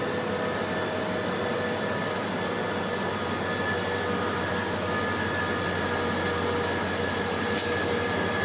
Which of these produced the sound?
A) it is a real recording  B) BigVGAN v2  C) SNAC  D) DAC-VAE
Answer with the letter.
A